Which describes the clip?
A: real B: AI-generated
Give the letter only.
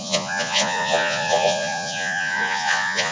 B